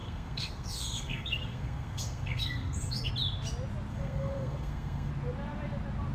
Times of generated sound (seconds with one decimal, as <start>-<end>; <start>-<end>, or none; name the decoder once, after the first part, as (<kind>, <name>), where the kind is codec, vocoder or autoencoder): 0.0-3.1 (codec, SNAC); 3.9-5.1